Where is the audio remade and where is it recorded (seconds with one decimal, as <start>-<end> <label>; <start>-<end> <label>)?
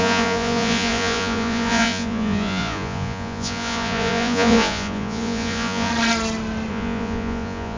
0.0-5.9 remade; 5.9-6.7 recorded; 6.7-7.8 remade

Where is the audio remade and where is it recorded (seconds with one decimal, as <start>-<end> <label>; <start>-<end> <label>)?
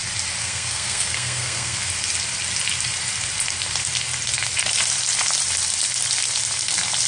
0.0-0.4 recorded; 0.4-1.9 remade; 1.9-7.1 recorded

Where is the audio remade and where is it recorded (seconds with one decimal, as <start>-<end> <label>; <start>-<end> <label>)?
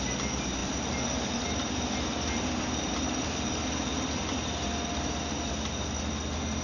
0.0-6.6 recorded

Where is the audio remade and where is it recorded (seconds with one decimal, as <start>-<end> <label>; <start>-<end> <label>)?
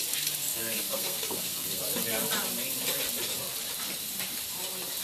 0.0-0.5 recorded; 0.5-1.8 remade; 1.8-5.0 recorded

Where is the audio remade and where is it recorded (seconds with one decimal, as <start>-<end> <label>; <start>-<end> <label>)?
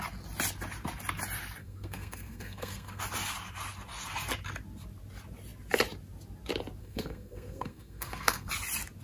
0.0-1.6 recorded; 1.6-3.0 remade; 3.0-6.8 recorded; 6.8-8.5 remade; 8.5-9.0 recorded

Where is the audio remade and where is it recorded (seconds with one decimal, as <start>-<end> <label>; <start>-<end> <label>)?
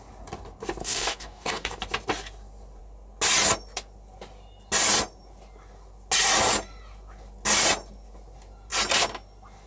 0.0-0.8 recorded; 0.8-1.8 remade; 1.8-9.7 recorded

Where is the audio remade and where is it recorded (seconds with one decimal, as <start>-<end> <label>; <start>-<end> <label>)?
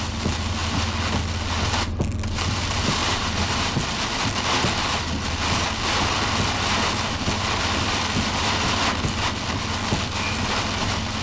0.0-3.0 recorded; 3.0-3.7 remade; 3.7-11.2 recorded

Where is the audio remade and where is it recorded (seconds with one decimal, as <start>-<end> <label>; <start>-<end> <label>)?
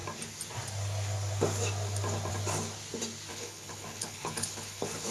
0.0-3.3 recorded; 3.3-5.1 remade